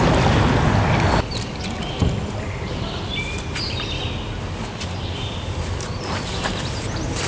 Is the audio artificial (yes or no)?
no